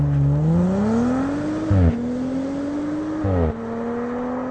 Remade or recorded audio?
recorded